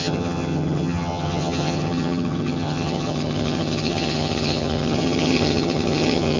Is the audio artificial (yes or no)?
yes